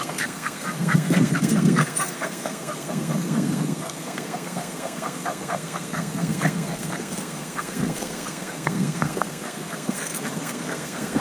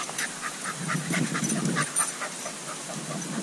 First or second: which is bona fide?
second